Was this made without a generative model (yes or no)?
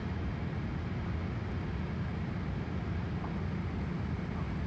yes